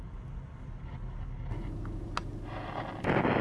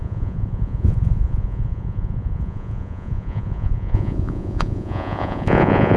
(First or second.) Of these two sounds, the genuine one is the first